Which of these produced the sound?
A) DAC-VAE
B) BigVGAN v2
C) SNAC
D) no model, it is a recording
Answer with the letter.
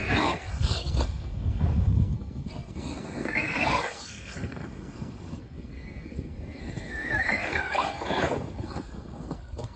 C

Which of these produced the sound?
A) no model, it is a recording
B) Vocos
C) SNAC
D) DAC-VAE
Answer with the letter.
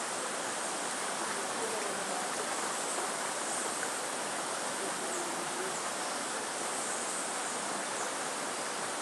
A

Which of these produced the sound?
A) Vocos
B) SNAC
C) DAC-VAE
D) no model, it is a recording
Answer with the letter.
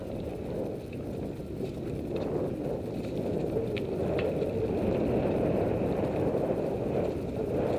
D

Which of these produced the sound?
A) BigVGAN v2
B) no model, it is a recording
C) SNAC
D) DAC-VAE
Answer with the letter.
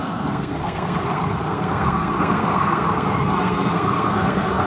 C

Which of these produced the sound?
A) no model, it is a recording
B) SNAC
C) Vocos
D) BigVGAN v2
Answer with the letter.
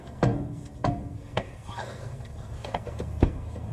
B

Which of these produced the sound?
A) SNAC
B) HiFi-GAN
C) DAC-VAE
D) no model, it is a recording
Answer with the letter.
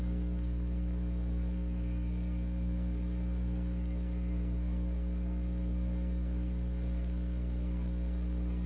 A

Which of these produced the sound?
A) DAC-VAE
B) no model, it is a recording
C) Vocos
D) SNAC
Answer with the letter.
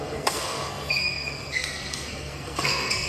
D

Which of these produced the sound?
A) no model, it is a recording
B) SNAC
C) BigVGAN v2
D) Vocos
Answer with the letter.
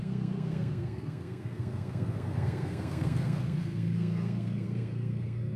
B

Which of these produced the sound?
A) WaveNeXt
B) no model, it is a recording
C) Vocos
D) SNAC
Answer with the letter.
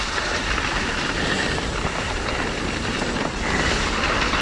B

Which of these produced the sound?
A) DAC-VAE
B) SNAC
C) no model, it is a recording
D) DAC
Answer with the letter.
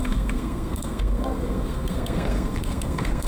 B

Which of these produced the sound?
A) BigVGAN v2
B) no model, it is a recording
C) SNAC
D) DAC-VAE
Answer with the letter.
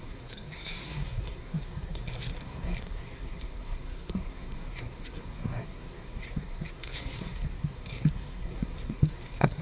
C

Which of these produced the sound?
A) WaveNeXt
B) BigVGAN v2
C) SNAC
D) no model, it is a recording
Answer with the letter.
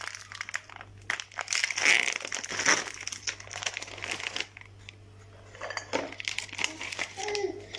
D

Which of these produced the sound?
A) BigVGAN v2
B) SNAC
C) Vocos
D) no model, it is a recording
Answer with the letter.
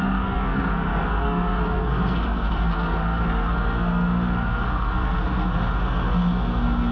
B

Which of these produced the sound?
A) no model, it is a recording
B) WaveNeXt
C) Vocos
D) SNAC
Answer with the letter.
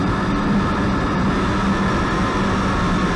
A